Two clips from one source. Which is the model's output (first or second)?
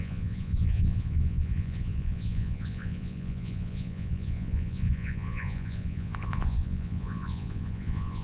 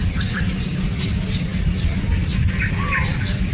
first